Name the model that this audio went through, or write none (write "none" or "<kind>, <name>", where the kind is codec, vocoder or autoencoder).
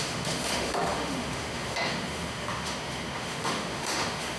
autoencoder, DAC-VAE